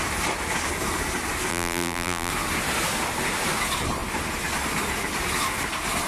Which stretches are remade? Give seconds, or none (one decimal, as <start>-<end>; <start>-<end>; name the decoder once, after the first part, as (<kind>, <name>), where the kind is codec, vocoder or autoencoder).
1.5-2.3 (vocoder, BigVGAN v2)